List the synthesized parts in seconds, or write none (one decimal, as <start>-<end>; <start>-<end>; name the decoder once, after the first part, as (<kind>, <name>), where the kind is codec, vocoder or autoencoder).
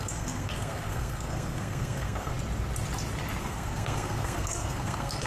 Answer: 0.0-2.3 (codec, SNAC); 3.4-5.3